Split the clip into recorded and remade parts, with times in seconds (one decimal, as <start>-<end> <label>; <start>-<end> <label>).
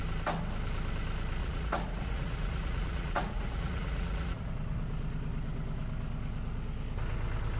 0.0-1.4 recorded; 1.4-4.5 remade; 4.5-7.6 recorded